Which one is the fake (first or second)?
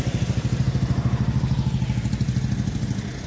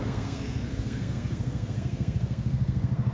second